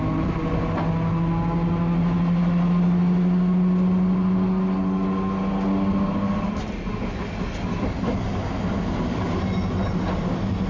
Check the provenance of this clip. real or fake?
real